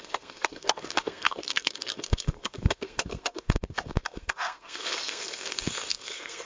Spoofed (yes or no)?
yes